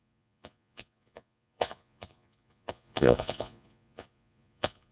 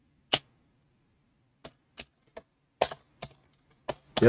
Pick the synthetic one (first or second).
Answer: first